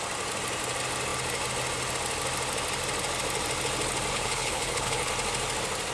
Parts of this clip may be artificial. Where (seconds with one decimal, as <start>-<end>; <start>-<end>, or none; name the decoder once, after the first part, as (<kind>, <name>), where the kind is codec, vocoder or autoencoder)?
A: 4.1-5.1 (codec, HILCodec)